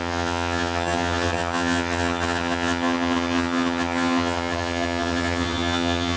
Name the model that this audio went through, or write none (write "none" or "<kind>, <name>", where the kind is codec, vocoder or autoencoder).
vocoder, HiFi-GAN